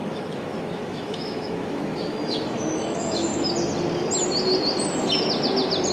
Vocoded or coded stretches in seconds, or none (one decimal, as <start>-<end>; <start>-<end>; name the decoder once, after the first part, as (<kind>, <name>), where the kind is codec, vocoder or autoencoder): 0.0-3.3 (autoencoder, DAC-VAE)